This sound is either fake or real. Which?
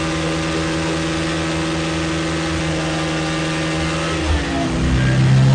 real